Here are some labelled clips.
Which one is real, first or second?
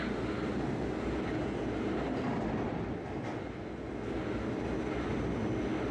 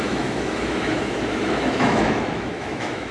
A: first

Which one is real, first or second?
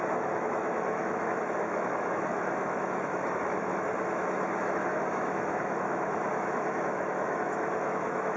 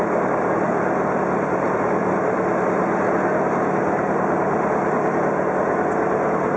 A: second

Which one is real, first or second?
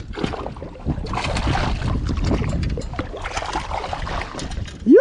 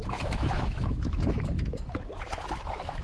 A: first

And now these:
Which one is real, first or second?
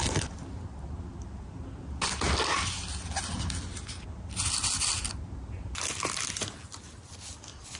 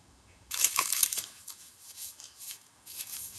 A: first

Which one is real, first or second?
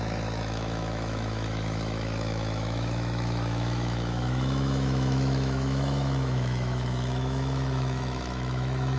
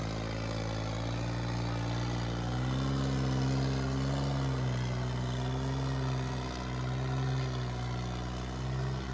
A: second